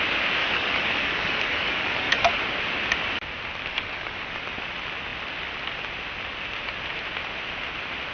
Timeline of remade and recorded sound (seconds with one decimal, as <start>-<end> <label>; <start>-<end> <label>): 0.0-0.4 recorded; 0.4-2.4 remade; 2.4-3.7 recorded; 3.7-4.4 remade; 4.4-8.1 recorded